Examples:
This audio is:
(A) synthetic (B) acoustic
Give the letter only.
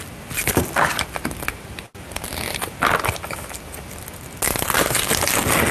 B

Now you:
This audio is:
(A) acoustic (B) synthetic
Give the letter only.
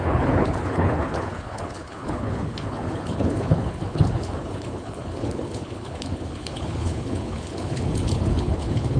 B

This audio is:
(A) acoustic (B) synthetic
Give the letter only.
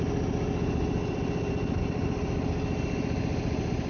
A